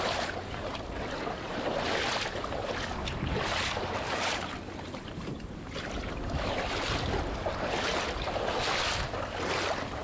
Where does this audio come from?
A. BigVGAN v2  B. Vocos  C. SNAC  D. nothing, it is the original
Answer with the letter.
D